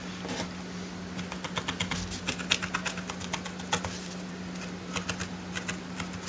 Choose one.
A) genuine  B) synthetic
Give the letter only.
A